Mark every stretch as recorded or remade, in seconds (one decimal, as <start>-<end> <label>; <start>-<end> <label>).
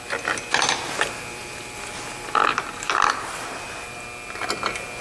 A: 0.0-5.0 recorded